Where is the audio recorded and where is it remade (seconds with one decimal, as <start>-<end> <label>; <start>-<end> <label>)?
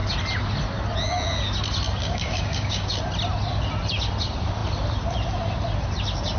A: 0.0-2.0 recorded; 2.0-2.9 remade; 2.9-6.4 recorded